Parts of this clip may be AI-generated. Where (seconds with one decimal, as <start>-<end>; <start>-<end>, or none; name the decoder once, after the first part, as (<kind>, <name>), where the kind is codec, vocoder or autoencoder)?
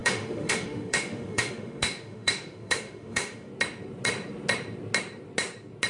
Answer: 0.0-3.5 (autoencoder, DAC-VAE)